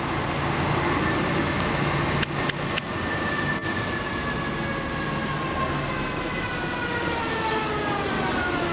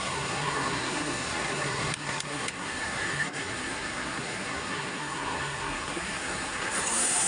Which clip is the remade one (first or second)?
second